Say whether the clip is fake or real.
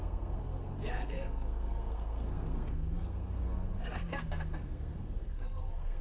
fake